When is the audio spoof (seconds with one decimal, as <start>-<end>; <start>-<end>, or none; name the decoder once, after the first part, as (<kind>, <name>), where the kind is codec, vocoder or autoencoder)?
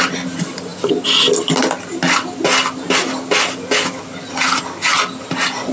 none